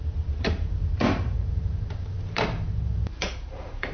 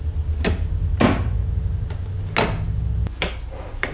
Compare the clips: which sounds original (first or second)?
second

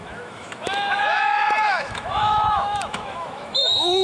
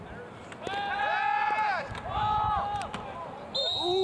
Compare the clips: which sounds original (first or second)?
second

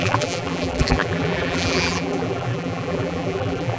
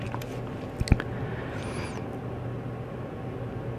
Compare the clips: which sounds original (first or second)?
second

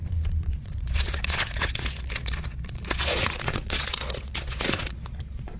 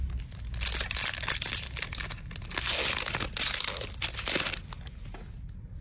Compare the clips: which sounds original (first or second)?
second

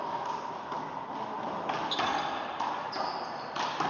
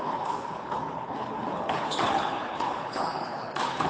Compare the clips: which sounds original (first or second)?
first